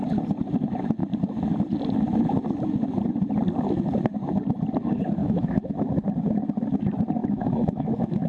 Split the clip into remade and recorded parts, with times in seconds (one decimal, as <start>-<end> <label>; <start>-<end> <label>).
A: 0.0-5.2 recorded; 5.2-5.7 remade; 5.7-7.2 recorded; 7.2-8.3 remade